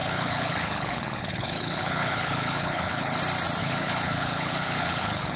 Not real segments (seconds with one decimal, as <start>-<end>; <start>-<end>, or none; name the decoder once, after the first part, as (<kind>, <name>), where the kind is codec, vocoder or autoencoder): 0.0-3.2 (codec, HILCodec); 3.6-5.4